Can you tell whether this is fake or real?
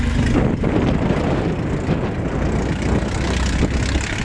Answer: real